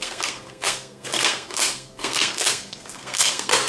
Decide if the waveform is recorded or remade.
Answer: remade